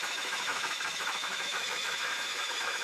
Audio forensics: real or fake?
fake